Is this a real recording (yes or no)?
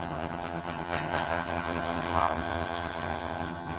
no